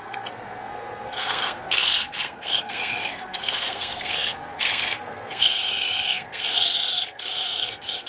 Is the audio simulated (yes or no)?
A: yes